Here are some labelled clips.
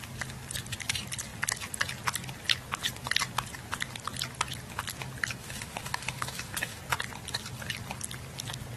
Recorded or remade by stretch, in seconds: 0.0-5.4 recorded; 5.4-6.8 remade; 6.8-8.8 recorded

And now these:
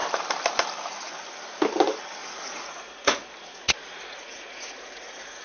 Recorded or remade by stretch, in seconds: 0.0-2.2 recorded; 2.2-5.4 remade

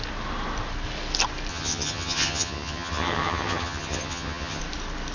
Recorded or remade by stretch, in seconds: 0.0-1.5 recorded; 1.5-4.6 remade; 4.6-5.1 recorded